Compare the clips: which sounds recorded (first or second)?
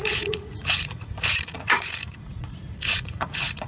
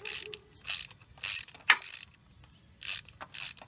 second